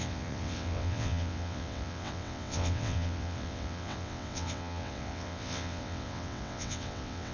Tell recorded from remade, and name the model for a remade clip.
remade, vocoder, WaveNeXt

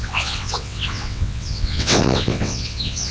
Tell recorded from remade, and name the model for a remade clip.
remade, vocoder, WaveNeXt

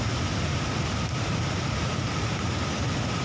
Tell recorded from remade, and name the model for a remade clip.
recorded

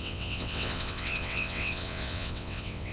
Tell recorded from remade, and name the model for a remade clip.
remade, vocoder, WaveNeXt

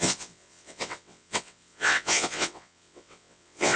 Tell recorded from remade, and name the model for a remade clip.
remade, vocoder, WaveNeXt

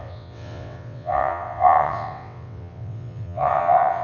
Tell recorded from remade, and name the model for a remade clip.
remade, vocoder, WaveNeXt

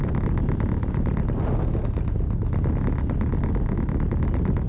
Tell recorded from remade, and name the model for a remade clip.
recorded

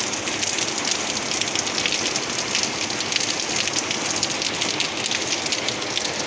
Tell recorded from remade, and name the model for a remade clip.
recorded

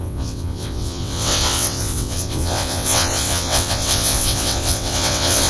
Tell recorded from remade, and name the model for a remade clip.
remade, vocoder, WaveNeXt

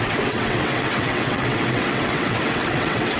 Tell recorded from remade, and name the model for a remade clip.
remade, vocoder, WaveNeXt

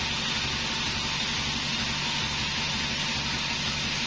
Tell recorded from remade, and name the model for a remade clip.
recorded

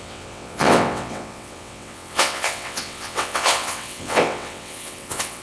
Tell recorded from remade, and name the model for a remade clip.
remade, vocoder, WaveNeXt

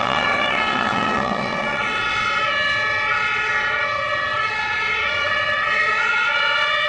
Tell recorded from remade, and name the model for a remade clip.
remade, vocoder, WaveNeXt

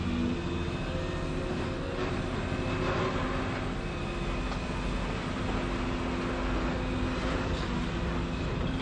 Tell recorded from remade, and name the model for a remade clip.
recorded